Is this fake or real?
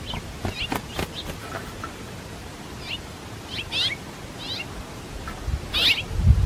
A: real